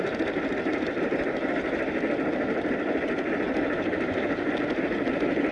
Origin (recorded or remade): recorded